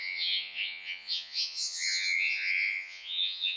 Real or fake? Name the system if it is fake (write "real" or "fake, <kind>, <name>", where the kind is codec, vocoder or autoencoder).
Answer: fake, vocoder, Vocos